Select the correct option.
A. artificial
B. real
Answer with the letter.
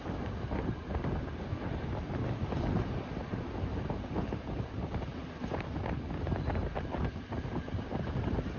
B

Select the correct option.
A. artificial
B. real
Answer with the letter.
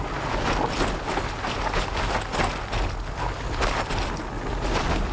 B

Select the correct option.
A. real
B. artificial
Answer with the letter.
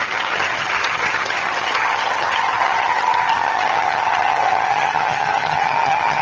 B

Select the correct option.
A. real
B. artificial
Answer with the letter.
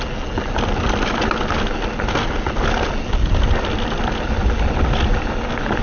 A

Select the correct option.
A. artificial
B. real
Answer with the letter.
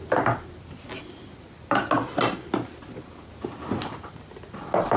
B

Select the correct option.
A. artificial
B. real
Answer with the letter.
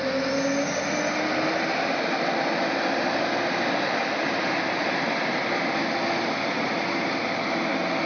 B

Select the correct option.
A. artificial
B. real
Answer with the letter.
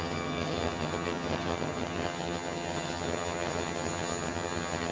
A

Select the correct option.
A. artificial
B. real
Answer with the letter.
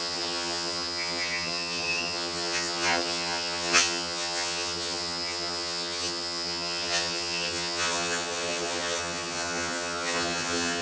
A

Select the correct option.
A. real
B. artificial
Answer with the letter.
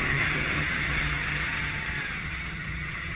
B